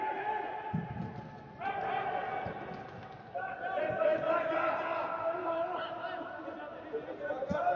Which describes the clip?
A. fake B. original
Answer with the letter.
B